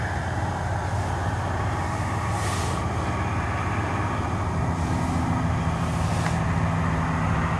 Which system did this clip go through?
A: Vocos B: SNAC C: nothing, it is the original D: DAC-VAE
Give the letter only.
C